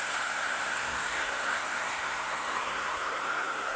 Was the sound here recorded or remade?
remade